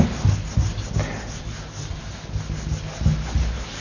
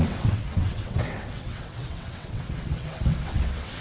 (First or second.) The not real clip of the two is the second